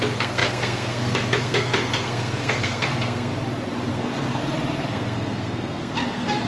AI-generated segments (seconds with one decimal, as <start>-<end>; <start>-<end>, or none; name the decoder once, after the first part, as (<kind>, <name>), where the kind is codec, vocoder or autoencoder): 0.0-3.3 (codec, SNAC); 3.9-4.4; 4.9-6.5